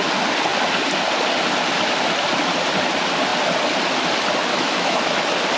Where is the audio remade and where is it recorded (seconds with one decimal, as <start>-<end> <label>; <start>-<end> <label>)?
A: 0.0-4.5 recorded; 4.5-5.1 remade; 5.1-5.6 recorded